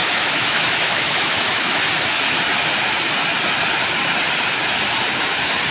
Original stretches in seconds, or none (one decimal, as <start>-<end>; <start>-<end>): 1.8-5.7